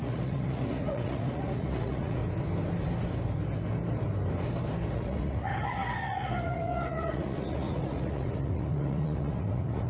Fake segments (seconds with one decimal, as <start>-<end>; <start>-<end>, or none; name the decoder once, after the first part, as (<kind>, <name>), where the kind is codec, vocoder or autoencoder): 0.0-2.2 (vocoder, Vocos); 4.9-9.9